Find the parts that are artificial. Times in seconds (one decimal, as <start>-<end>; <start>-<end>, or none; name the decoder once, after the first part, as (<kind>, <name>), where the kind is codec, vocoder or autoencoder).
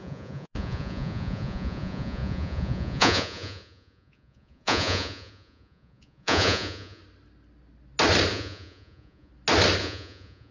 0.0-7.0 (vocoder, Vocos); 8.3-9.3; 9.8-10.5